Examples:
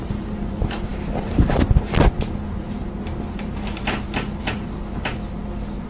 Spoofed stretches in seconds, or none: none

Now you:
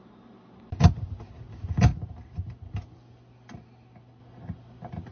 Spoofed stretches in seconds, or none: none

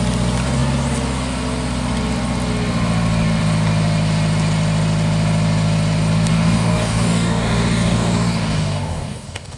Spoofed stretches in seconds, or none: 6.3-9.6 (codec, DAC)

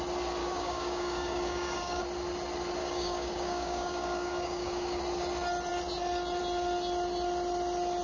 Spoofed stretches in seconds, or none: 0.4-2.0 (codec, DAC); 2.8-5.0